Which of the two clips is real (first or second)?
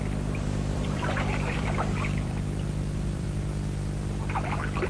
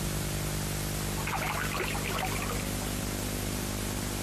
second